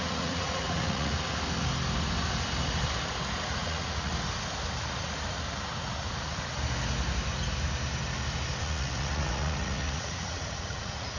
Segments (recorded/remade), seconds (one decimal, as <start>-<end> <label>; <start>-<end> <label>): 0.0-1.1 remade; 1.1-3.5 recorded; 3.5-4.1 remade; 4.1-8.6 recorded; 8.6-11.2 remade